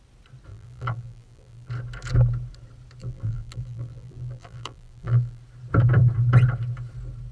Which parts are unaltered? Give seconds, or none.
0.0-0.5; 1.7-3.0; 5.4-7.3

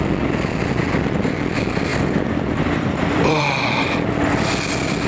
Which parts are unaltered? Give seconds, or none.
0.0-1.9; 3.8-5.1